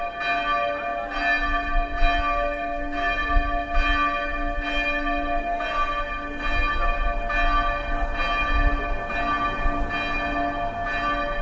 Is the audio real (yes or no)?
yes